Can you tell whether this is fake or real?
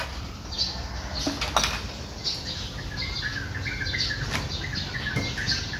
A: real